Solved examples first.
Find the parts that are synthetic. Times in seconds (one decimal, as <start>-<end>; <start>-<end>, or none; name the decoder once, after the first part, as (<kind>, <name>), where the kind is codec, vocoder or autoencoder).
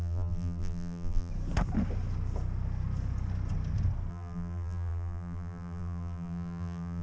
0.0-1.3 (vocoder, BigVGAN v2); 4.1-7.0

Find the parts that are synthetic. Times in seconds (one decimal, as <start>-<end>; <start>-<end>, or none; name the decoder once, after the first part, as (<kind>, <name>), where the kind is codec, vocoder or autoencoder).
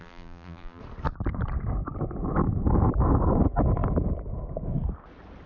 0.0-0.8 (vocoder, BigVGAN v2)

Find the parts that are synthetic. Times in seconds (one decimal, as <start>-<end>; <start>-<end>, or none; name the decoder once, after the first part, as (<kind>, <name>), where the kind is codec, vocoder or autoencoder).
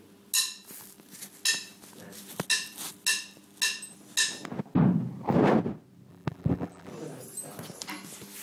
6.1-6.9 (vocoder, BigVGAN v2)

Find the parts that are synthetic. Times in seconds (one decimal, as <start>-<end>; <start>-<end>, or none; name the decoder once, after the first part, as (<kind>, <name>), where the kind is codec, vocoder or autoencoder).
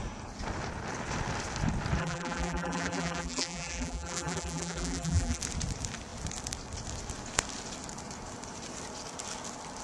2.0-5.4 (vocoder, BigVGAN v2)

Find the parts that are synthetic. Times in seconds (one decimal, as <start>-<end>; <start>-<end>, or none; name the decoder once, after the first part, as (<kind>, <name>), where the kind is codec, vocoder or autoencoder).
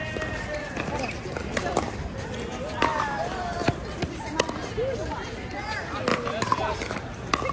2.9-3.5 (vocoder, BigVGAN v2); 4.8-5.5; 6.1-6.7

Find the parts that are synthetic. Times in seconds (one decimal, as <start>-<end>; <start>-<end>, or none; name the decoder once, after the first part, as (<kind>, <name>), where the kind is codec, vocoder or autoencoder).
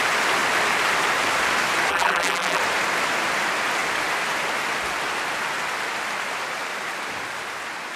1.9-2.6 (vocoder, BigVGAN v2)